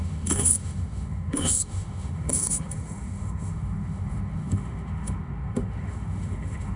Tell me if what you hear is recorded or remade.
remade